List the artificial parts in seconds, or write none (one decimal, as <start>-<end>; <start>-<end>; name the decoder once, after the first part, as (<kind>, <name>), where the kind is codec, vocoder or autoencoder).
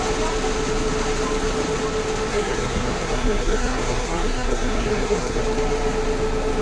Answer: 2.3-5.4 (codec, SNAC)